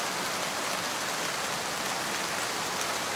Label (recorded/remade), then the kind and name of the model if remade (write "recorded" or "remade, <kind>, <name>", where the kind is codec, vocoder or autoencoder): recorded